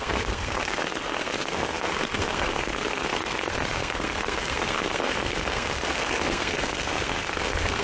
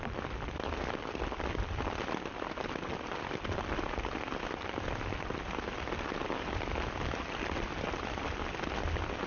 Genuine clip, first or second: second